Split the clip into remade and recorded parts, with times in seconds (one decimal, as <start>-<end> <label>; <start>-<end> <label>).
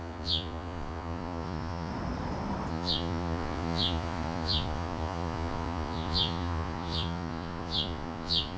0.0-1.9 remade; 1.9-2.7 recorded; 2.7-8.6 remade